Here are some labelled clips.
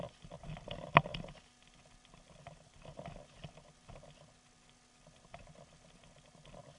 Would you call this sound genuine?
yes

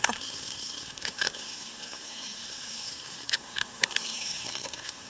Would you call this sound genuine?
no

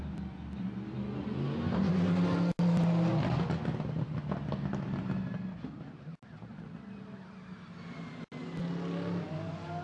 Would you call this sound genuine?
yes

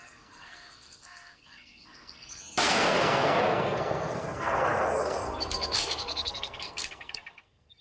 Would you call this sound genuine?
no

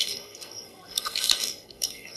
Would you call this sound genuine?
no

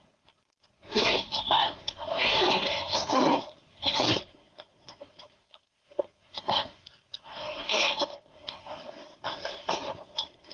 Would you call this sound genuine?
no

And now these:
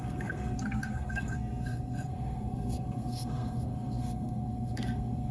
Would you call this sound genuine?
no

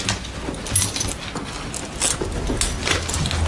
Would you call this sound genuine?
yes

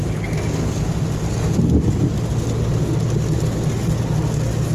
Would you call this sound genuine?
yes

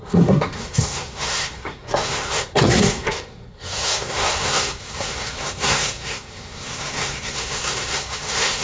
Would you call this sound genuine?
no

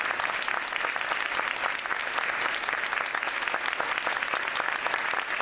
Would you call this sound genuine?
yes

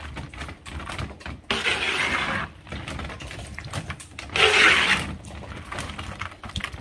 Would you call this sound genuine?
yes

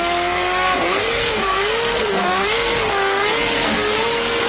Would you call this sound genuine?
no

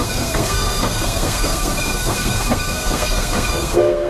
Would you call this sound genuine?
no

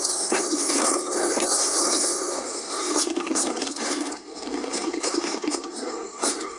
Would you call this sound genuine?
no